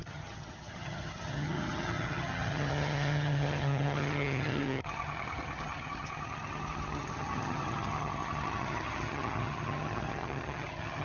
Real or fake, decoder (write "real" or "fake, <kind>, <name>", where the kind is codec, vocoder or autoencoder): fake, vocoder, HiFi-GAN